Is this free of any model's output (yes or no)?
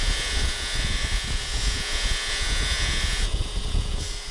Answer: no